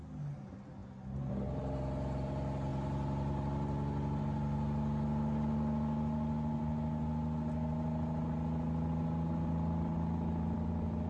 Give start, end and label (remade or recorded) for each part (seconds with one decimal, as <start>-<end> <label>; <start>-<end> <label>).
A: 0.0-11.1 recorded